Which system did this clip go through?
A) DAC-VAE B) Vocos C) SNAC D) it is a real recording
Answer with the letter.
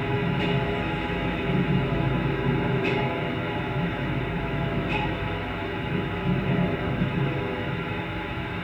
A